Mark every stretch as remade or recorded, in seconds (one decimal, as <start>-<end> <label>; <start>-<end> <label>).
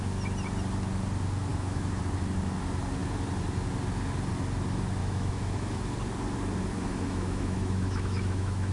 0.0-1.5 recorded; 1.5-2.0 remade; 2.0-5.0 recorded; 5.0-5.8 remade; 5.8-6.9 recorded; 6.9-8.7 remade